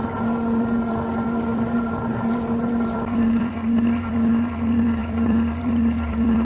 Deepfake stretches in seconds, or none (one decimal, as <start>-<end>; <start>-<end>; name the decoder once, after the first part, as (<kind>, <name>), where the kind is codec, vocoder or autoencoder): 0.0-6.4 (vocoder, BigVGAN v2)